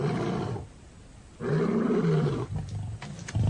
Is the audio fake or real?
real